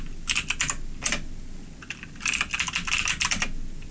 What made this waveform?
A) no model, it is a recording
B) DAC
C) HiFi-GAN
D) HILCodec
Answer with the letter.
A